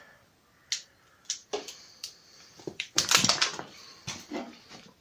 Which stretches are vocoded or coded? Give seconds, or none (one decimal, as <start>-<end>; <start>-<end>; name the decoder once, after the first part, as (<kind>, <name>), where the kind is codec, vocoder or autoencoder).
1.4-4.3 (vocoder, BigVGAN v2)